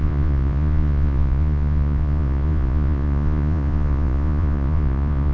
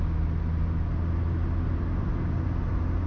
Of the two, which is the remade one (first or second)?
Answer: first